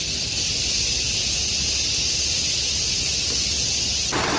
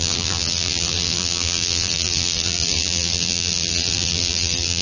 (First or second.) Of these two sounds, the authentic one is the first